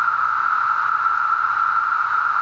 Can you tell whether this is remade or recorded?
recorded